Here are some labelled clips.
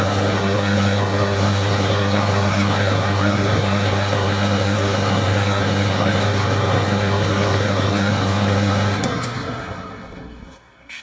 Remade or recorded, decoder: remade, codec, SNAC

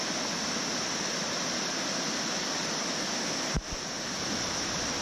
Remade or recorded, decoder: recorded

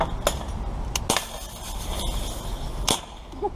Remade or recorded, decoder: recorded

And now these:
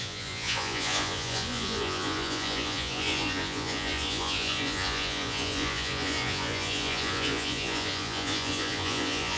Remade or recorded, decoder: remade, vocoder, Vocos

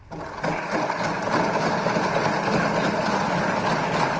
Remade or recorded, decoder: recorded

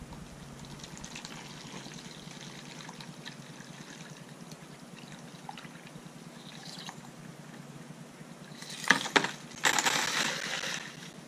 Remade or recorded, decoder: recorded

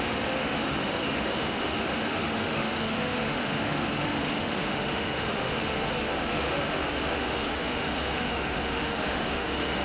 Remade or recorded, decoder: remade, autoencoder, DAC-VAE